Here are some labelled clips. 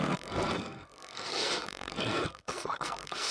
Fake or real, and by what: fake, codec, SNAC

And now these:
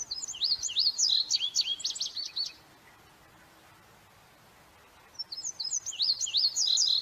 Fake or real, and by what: real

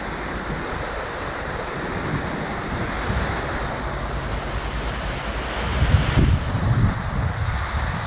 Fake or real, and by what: real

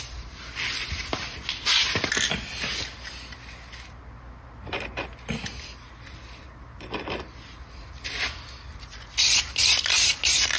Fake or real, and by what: real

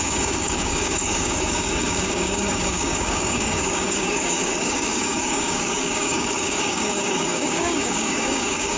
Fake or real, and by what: fake, codec, DAC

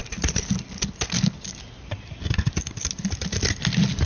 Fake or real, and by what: real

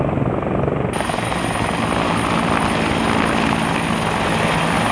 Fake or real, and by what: real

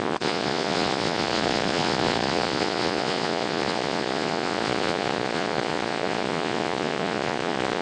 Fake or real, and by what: fake, vocoder, Vocos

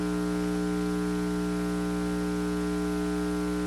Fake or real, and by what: real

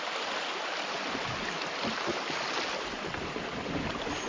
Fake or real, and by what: real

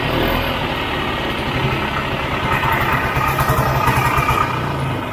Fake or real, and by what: real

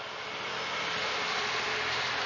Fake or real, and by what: real